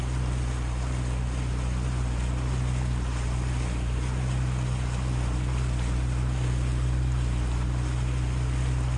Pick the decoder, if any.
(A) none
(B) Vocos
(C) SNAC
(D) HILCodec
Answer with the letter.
A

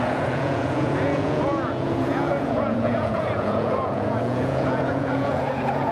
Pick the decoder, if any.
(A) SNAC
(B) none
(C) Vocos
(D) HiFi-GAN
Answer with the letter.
C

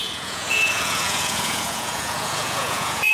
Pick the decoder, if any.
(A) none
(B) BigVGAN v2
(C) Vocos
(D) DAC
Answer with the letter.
C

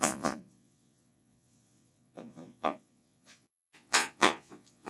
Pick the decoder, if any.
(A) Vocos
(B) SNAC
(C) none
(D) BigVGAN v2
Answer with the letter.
A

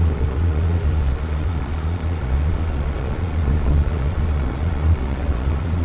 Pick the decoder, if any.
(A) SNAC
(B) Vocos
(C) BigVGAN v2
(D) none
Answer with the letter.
B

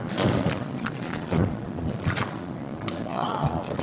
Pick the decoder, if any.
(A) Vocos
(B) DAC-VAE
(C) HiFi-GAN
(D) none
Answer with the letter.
A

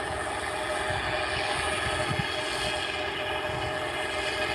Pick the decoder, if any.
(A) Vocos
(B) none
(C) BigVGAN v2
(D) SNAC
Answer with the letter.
B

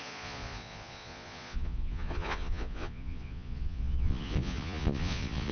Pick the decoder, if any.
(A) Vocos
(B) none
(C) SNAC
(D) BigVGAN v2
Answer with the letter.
A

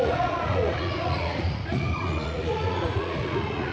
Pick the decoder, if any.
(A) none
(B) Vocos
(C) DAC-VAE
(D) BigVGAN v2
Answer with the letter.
B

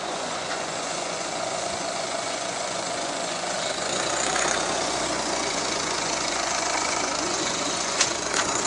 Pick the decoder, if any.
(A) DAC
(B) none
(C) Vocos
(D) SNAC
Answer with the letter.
C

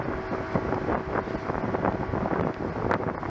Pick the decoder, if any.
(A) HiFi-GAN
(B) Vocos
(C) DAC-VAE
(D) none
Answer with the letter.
D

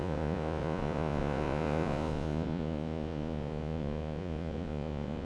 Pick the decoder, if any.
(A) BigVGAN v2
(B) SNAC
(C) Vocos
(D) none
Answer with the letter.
C